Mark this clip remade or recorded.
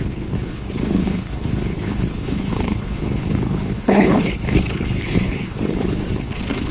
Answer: remade